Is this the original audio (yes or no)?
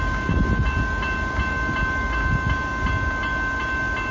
yes